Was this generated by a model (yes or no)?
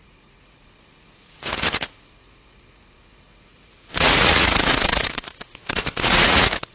yes